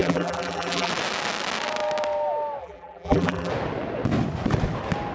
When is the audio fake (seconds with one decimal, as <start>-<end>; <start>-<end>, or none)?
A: 0.0-0.9; 2.6-3.5